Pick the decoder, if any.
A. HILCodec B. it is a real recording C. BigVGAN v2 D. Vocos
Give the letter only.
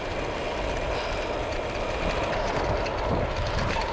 B